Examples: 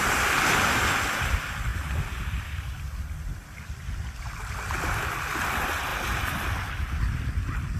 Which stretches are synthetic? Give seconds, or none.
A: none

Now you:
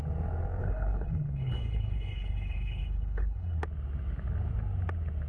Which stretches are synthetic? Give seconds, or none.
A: 0.6-3.6 (codec, HILCodec)

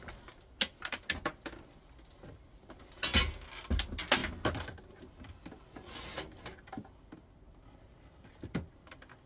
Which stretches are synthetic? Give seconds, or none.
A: none

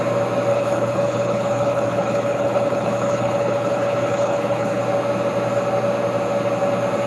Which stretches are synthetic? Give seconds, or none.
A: 0.5-4.8 (codec, HILCodec)

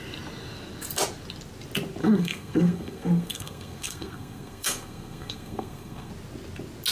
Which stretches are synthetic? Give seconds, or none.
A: 2.0-6.1 (codec, SNAC)

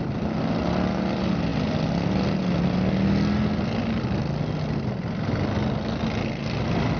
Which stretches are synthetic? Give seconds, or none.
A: none

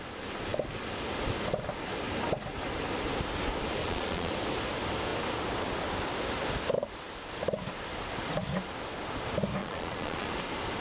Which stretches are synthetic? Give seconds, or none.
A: 3.8-4.3 (vocoder, Vocos); 9.6-10.3